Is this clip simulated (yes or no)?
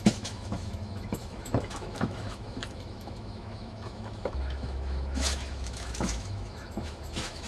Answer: yes